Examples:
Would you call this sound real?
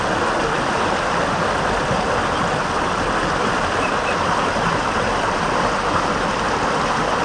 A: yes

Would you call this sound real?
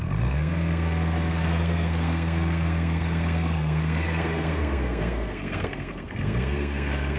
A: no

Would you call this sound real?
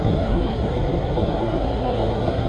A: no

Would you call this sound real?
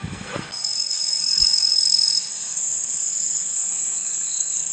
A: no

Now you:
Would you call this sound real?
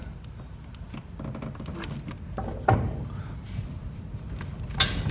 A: yes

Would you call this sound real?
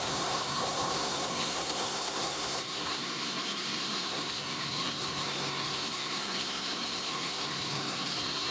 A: no